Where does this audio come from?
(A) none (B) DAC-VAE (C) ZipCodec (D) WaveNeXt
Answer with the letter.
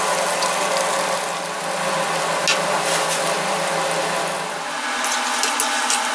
A